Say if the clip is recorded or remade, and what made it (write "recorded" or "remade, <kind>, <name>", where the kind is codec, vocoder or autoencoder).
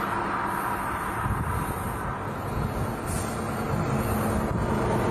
recorded